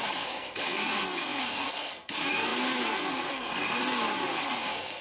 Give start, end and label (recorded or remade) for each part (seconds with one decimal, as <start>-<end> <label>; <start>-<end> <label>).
0.0-3.8 remade; 3.8-4.6 recorded; 4.6-5.0 remade